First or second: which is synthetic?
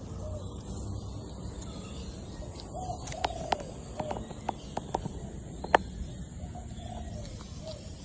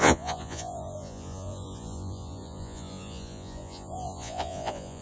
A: second